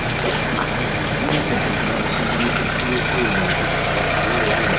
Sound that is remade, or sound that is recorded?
recorded